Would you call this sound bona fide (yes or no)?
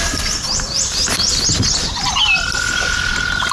yes